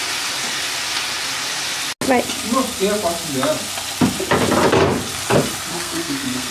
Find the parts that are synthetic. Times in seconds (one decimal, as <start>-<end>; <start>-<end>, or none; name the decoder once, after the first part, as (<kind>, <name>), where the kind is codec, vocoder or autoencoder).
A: 5.7-6.5 (codec, SNAC)